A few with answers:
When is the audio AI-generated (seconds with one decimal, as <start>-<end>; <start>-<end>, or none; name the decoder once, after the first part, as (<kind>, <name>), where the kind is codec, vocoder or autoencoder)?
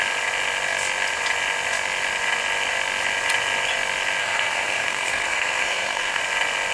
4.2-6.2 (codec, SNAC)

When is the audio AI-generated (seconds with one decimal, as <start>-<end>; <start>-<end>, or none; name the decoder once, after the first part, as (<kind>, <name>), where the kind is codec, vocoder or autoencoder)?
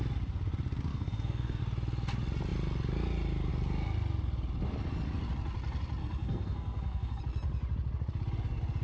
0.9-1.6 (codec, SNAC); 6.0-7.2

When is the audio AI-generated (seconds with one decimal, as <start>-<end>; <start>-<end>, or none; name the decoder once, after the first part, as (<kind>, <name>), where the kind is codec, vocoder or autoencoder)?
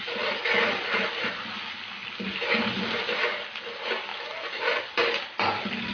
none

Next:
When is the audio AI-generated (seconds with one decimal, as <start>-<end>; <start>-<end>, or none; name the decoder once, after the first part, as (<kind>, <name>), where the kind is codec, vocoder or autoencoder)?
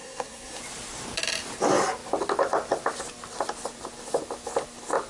0.0-0.6 (codec, SNAC)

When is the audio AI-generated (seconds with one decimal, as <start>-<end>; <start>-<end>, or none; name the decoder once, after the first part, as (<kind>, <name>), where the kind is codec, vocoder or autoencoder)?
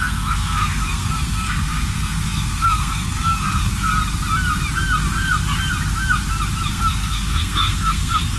0.0-3.9 (codec, SNAC); 6.7-8.4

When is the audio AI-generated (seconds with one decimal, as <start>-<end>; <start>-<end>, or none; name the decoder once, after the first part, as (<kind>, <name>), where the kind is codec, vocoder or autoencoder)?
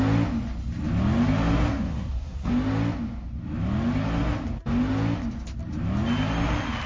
1.7-2.5 (codec, SNAC)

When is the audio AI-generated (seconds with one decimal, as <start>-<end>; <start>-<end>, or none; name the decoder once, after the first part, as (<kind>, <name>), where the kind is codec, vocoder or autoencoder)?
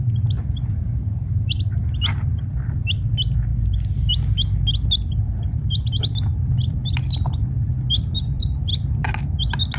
none